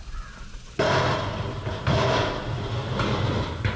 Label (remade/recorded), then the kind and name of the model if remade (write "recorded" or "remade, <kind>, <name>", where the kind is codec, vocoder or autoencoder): recorded